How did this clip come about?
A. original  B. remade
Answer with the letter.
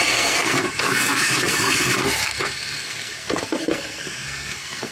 B